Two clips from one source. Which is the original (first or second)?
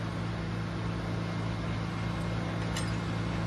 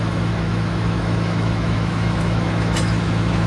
first